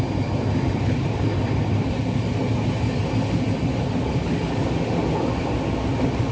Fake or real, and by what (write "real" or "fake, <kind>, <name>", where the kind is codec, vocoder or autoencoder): real